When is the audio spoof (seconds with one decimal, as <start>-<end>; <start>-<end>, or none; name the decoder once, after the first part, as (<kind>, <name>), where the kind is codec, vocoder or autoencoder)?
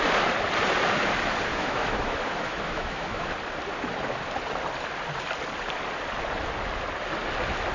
1.5-3.3 (autoencoder, DAC-VAE)